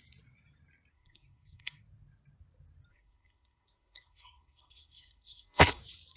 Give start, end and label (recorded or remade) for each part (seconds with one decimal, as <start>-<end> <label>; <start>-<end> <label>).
0.0-0.9 recorded; 0.9-1.8 remade; 1.8-2.9 recorded; 2.9-5.8 remade; 5.8-6.2 recorded